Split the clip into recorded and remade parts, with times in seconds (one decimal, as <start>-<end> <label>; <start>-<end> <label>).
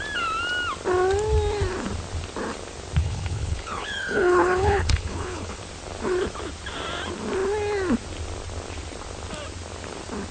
0.0-3.0 recorded; 3.0-5.6 remade; 5.6-10.3 recorded